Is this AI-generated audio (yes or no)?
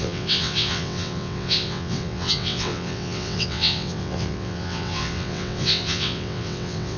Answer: yes